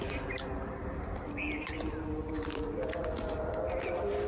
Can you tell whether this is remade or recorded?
recorded